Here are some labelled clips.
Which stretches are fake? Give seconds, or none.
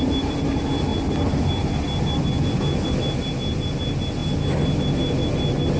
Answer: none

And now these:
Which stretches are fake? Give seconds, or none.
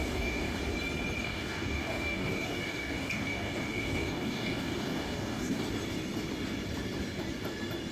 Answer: 0.0-0.6; 1.2-5.6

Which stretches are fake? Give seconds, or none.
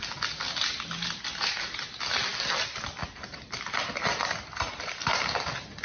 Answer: none